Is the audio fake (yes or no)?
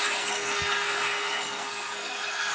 yes